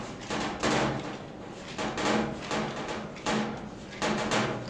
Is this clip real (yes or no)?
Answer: yes